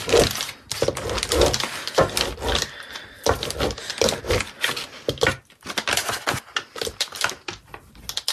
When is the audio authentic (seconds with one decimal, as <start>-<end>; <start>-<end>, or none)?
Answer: 0.0-8.3